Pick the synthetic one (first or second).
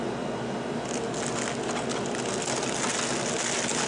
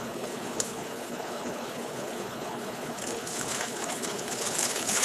second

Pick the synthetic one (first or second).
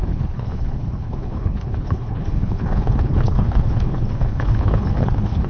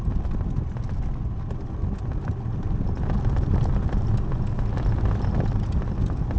first